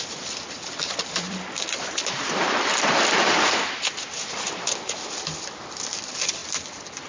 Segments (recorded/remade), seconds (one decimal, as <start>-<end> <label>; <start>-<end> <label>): 0.0-6.4 remade; 6.4-7.1 recorded